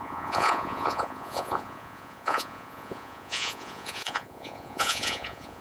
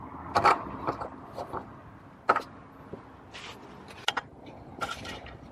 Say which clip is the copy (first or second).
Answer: first